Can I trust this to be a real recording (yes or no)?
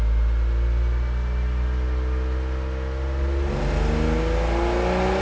yes